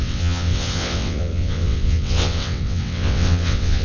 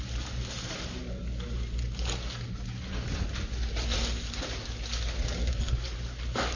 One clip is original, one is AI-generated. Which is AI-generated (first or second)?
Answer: first